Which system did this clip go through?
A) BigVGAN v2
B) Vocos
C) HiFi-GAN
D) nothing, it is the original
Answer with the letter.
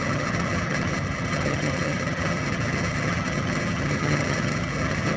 C